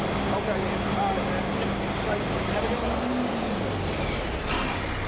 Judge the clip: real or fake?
real